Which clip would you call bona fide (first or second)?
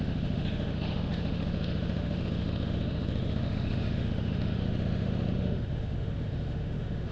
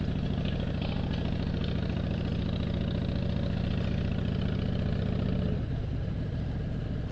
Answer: second